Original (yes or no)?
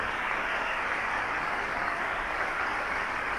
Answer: no